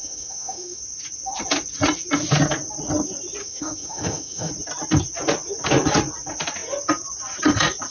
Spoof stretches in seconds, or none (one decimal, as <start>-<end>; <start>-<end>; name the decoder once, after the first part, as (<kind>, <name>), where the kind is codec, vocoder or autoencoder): 0.0-0.8 (autoencoder, DAC-VAE); 3.4-4.5